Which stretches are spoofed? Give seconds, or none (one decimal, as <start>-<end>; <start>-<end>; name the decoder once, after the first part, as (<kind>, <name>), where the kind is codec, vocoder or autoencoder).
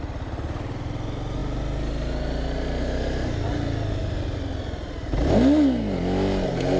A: none